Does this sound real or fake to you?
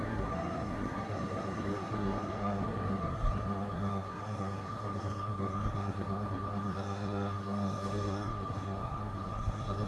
fake